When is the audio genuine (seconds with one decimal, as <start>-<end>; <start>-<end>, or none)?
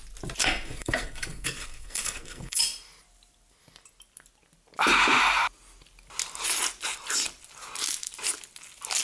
0.0-0.4; 2.6-9.0